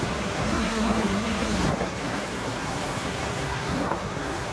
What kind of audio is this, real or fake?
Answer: fake